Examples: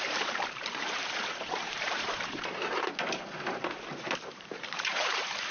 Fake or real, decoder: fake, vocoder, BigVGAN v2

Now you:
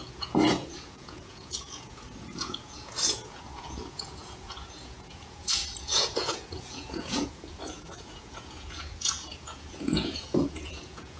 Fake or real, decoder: fake, vocoder, Vocos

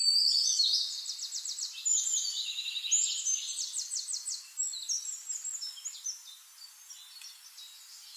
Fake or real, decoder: real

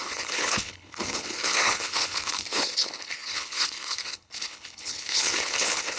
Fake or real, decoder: fake, codec, HILCodec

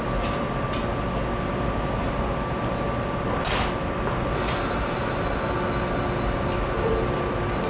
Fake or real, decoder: real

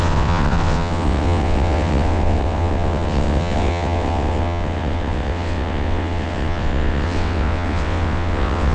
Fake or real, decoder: fake, vocoder, WaveNeXt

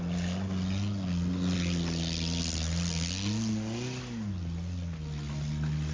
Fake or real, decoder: real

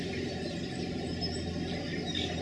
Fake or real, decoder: real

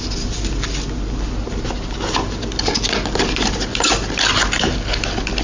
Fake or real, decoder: real